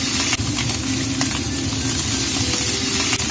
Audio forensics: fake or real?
real